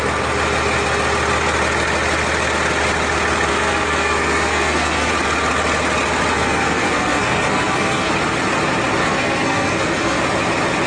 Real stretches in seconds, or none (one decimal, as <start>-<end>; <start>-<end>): 0.0-3.5; 5.1-6.3; 8.1-9.0; 10.2-10.9